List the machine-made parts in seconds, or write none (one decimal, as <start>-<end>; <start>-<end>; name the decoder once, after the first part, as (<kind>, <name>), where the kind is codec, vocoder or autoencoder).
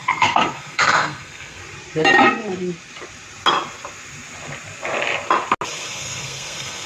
0.0-1.6 (codec, SNAC); 5.7-6.9